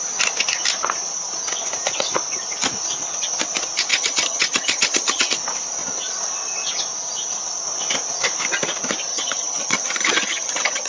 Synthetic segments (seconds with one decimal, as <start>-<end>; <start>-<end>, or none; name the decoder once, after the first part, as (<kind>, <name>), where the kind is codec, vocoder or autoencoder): 3.9-5.3 (vocoder, HiFi-GAN); 9.1-10.9